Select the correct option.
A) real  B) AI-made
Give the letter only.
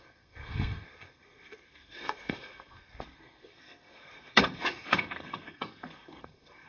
B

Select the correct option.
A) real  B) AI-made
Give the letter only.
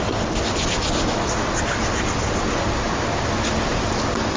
A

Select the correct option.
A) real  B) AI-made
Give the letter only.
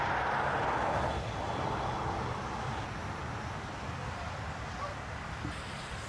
A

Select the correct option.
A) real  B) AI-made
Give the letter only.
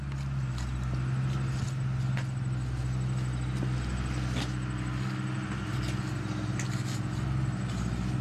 A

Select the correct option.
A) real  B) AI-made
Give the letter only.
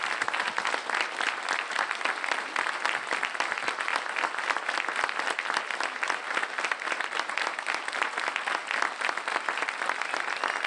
A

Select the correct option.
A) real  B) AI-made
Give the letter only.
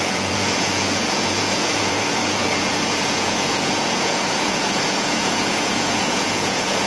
B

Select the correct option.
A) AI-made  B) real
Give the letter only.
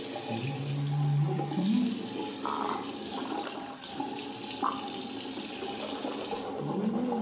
B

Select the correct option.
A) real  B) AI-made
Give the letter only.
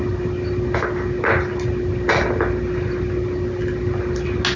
A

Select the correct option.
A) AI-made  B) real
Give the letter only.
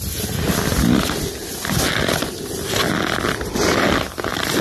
B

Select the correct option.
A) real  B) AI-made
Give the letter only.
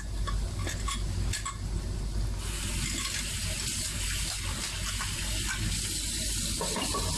A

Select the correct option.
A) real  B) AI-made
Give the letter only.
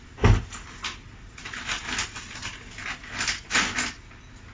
A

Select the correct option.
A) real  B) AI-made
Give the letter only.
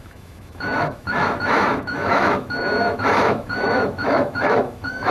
B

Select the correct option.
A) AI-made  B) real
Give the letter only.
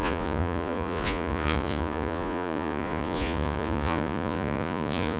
A